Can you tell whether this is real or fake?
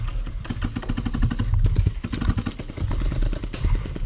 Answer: real